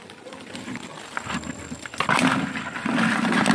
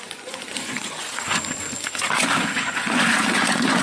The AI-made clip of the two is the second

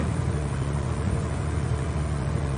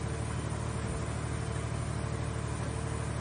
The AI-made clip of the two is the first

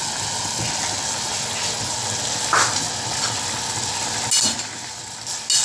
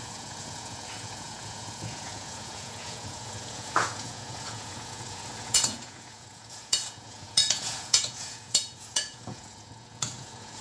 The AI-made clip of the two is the second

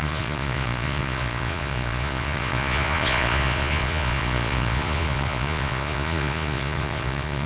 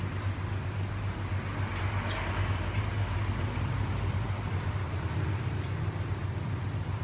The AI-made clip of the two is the first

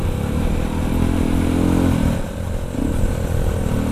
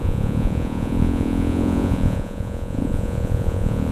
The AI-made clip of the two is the second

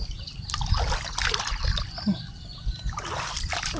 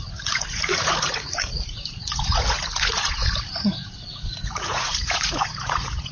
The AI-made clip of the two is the second